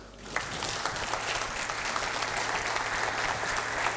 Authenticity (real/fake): real